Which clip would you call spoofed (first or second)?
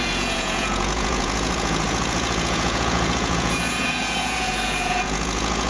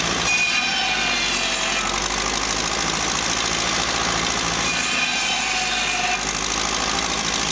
first